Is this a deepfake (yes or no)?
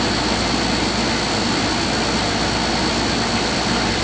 no